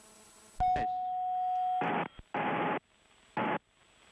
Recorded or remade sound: recorded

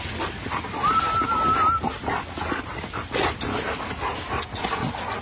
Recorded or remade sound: recorded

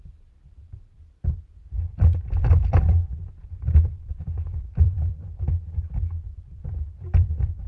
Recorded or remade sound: remade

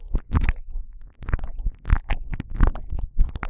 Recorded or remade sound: recorded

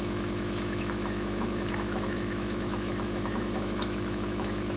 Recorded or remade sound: remade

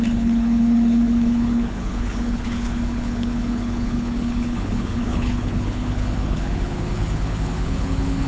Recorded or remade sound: remade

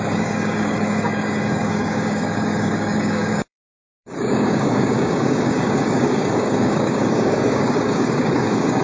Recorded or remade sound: remade